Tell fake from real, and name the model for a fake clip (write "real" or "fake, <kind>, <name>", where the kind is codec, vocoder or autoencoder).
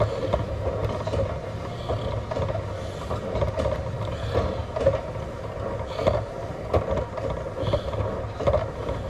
real